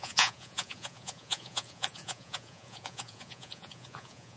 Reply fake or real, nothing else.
fake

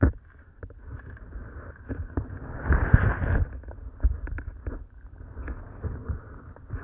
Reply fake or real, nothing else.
real